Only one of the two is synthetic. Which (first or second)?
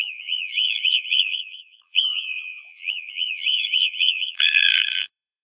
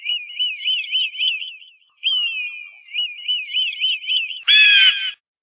first